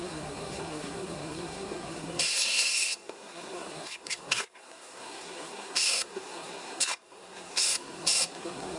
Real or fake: fake